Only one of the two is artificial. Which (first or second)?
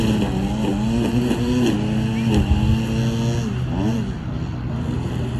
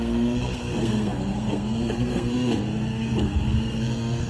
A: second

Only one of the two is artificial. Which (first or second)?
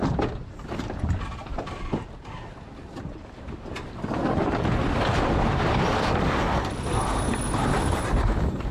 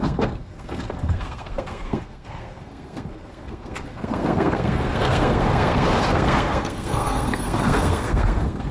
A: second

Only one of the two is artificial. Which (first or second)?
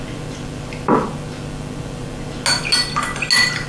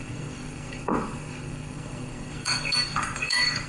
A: second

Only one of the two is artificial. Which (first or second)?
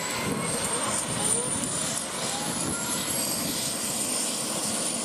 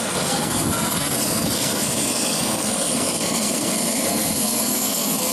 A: second